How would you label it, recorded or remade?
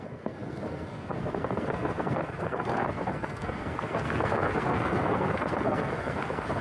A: remade